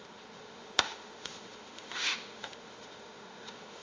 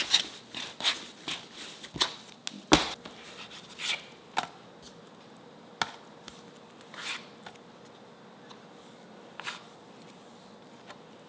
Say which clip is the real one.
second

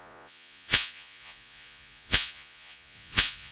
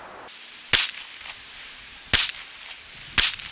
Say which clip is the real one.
second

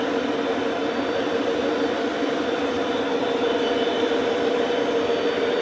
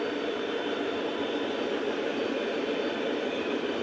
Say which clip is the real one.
first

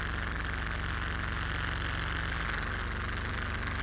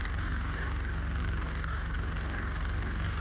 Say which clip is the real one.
first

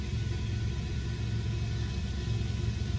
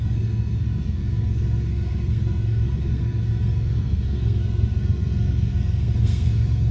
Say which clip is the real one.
first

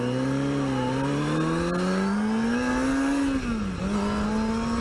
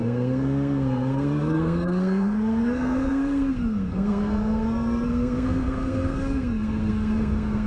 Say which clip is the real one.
first